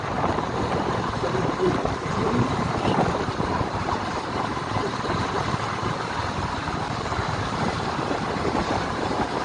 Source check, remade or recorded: remade